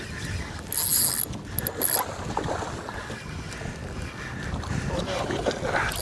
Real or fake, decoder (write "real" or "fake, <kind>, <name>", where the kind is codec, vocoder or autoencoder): real